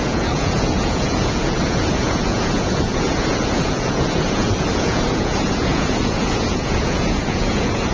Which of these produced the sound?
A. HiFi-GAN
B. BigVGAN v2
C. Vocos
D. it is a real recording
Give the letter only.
C